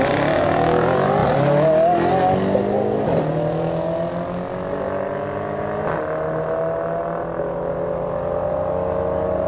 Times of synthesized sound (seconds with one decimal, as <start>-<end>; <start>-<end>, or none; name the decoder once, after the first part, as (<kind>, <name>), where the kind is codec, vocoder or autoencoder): none